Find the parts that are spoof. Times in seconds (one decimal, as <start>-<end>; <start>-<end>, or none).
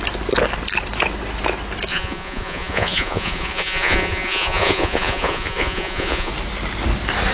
1.9-6.3